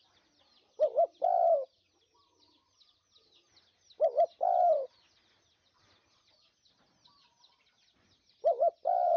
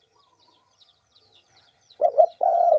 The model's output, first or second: second